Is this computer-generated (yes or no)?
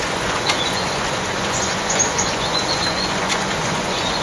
yes